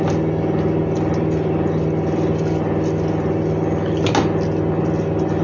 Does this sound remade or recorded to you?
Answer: recorded